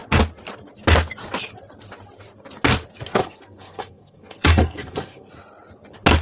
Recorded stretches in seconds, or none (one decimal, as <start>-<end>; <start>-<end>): 0.0-3.2; 5.3-6.2